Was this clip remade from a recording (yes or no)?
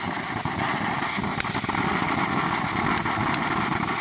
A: no